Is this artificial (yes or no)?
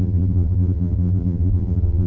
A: yes